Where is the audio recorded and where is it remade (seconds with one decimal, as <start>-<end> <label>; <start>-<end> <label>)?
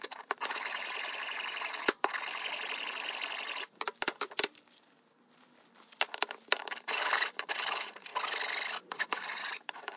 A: 0.0-1.7 remade; 1.7-6.6 recorded; 6.6-8.1 remade; 8.1-9.0 recorded; 9.0-10.0 remade